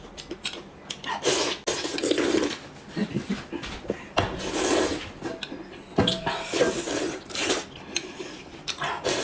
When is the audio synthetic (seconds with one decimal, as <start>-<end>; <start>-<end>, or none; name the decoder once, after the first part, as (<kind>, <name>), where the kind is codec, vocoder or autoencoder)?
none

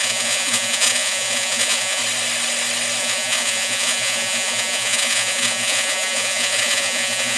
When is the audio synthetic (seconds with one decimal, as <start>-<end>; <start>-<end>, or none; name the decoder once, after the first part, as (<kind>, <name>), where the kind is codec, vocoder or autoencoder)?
0.0-2.0 (vocoder, Vocos); 3.0-7.4

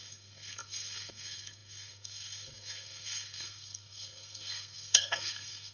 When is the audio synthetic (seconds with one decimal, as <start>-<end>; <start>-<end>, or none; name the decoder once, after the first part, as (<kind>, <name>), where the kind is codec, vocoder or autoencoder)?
0.0-5.7 (codec, SNAC)

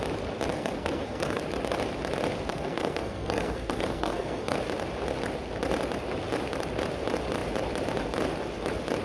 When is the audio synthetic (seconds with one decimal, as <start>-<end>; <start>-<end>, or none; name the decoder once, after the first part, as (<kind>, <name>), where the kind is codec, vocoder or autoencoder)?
0.5-1.4 (codec, SNAC); 2.5-4.6